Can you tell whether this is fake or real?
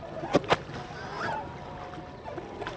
real